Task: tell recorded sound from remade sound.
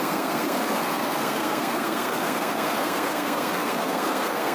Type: remade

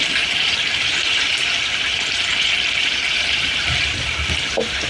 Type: recorded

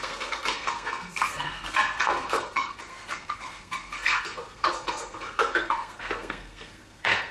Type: remade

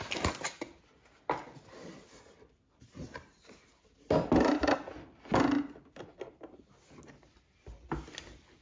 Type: recorded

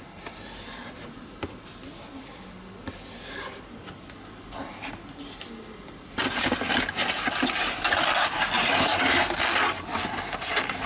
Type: recorded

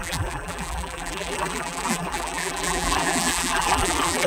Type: remade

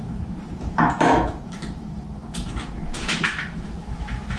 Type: remade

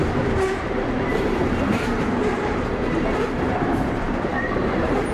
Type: remade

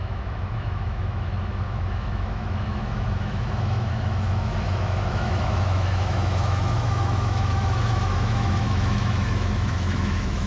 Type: remade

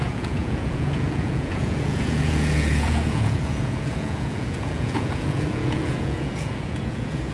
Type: remade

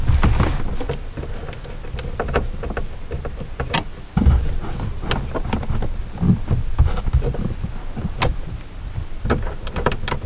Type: recorded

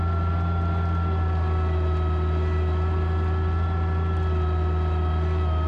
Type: recorded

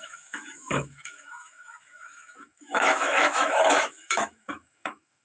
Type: remade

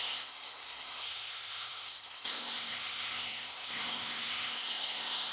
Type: remade